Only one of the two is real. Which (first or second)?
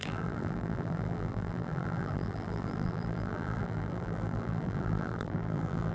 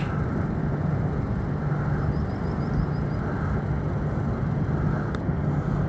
second